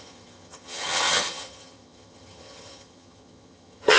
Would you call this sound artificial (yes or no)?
yes